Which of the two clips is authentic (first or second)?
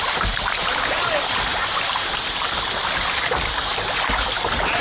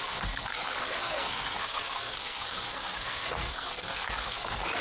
first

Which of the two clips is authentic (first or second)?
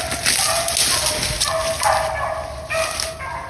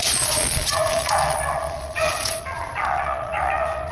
first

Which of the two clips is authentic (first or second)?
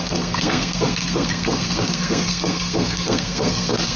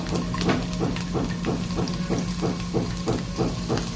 second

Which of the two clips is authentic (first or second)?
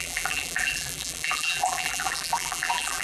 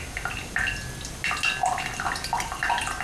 second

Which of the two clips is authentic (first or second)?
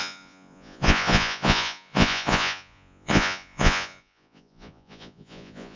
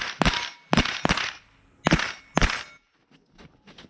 second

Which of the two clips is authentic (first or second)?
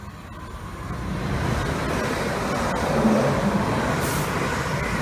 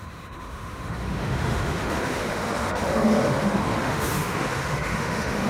first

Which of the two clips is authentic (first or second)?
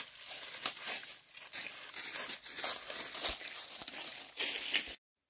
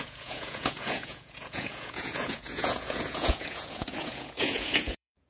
first